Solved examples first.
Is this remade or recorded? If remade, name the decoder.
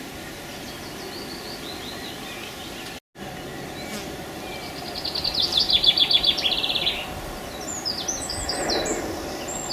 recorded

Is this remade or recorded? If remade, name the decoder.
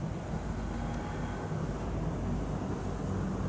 recorded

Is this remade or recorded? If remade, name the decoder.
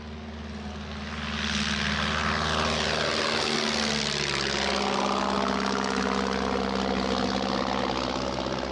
recorded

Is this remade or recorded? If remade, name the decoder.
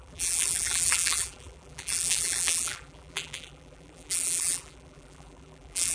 remade, vocoder, BigVGAN v2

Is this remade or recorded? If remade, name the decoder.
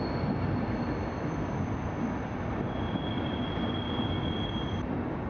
recorded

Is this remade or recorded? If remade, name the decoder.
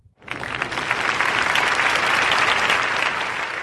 remade, vocoder, BigVGAN v2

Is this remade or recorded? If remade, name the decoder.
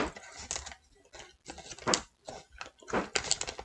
recorded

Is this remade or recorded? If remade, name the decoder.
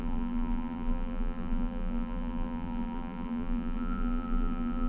remade, vocoder, BigVGAN v2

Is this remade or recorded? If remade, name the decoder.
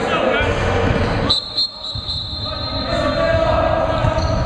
recorded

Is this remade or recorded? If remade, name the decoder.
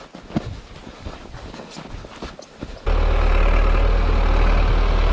recorded